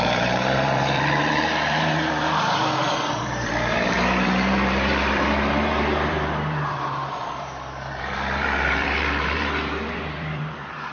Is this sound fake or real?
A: fake